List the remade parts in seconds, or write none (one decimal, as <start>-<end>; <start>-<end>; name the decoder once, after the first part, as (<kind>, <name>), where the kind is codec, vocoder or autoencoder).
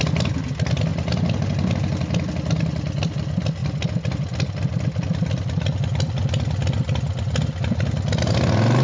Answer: none